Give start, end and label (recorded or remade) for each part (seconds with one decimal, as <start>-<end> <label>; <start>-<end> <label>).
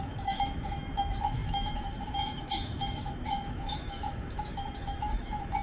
0.0-5.6 remade